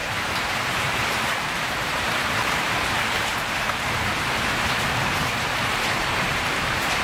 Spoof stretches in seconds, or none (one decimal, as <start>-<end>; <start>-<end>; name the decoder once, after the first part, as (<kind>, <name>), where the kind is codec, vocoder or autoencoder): 0.0-4.1 (vocoder, BigVGAN v2); 5.6-7.0